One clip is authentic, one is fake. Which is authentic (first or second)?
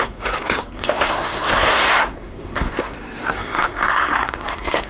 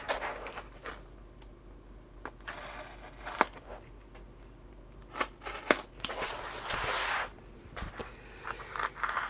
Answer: second